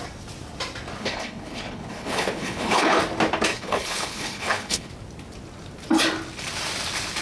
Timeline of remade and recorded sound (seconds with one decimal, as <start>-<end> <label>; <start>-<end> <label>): 0.0-1.0 recorded; 1.0-3.0 remade; 3.0-3.5 recorded; 3.5-4.9 remade; 4.9-7.2 recorded